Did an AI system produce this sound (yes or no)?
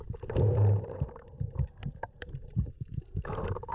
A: yes